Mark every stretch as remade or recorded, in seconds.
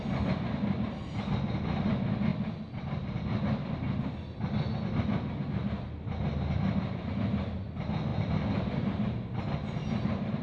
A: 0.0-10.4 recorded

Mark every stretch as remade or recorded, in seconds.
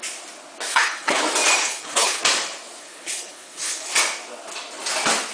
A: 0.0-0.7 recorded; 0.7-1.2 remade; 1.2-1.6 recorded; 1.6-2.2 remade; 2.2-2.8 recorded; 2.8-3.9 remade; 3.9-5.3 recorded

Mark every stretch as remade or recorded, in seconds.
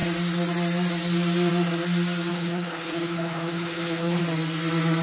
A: 0.0-2.3 recorded; 2.3-4.2 remade; 4.2-5.0 recorded